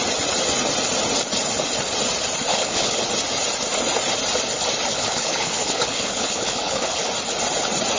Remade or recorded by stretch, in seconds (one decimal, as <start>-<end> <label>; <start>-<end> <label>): 0.0-2.5 recorded; 2.5-3.0 remade; 3.0-4.9 recorded; 4.9-7.1 remade; 7.1-8.0 recorded